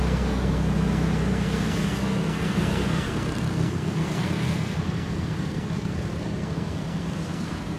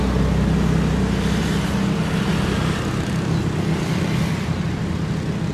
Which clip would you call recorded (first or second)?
second